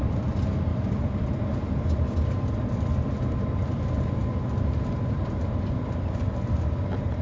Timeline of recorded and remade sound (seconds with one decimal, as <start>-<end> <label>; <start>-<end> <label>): 0.0-0.7 recorded; 0.7-1.7 remade; 1.7-2.9 recorded; 2.9-3.7 remade; 3.7-7.2 recorded